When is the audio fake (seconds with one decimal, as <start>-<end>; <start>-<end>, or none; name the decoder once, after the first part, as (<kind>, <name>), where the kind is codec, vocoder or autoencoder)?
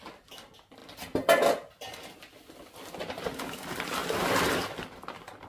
none